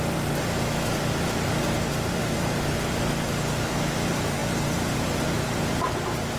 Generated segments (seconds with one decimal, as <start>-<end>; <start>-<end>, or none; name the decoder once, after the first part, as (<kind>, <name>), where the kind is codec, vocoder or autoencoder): none